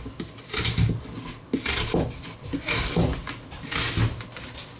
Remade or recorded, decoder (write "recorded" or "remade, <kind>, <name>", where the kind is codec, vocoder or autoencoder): recorded